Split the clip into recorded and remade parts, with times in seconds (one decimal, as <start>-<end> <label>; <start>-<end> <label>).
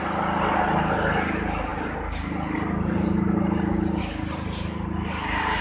0.0-5.6 recorded